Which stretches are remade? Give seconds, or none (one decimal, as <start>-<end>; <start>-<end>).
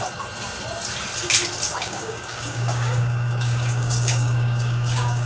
1.8-5.3